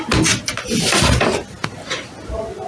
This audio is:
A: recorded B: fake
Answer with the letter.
A